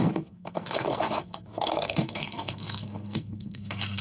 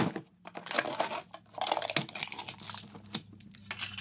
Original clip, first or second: second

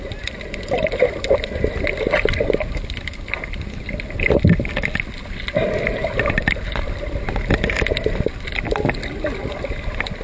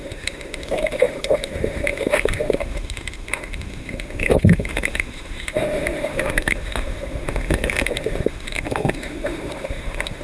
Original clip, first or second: first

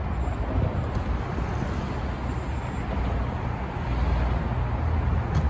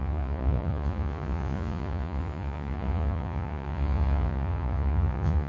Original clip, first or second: first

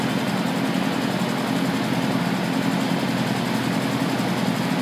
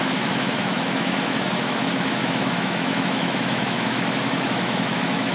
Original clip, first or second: first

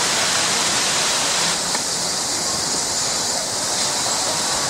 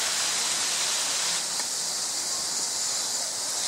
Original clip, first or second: second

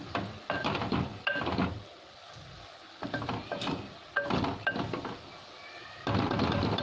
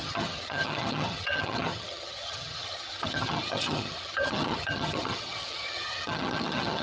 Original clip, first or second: first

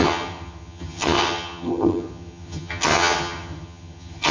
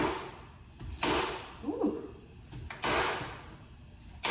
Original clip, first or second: second